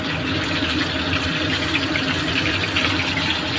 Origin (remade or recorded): recorded